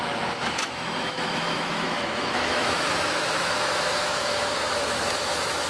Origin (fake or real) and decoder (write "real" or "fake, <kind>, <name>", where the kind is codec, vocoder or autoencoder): fake, autoencoder, DAC-VAE